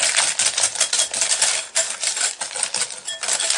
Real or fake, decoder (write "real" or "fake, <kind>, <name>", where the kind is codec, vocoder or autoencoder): real